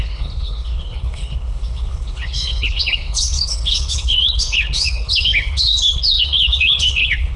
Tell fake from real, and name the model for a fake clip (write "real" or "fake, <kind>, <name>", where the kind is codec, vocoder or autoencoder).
fake, codec, HILCodec